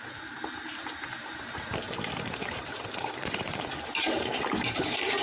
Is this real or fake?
fake